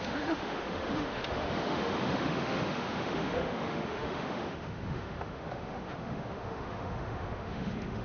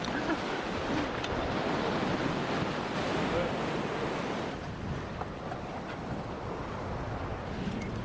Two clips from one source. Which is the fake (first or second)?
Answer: first